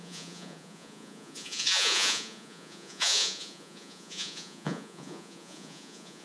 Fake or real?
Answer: fake